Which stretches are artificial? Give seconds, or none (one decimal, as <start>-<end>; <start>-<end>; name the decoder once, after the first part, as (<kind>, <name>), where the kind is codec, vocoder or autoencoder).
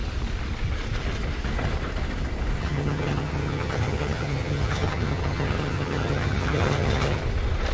2.6-7.2 (vocoder, HiFi-GAN)